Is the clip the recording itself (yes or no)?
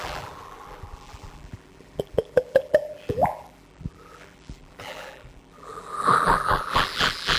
no